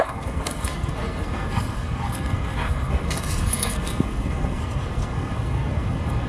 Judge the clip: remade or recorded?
remade